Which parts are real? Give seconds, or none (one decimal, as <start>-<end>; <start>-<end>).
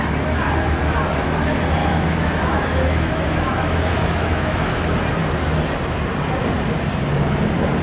0.0-1.8; 4.8-7.8